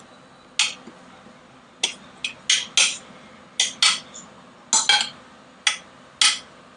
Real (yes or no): yes